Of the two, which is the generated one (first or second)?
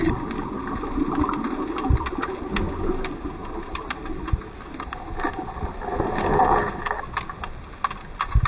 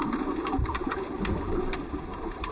second